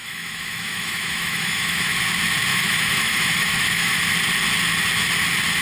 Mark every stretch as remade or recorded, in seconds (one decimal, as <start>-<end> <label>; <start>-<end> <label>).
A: 0.0-1.9 remade; 1.9-2.5 recorded; 2.5-4.0 remade; 4.0-5.6 recorded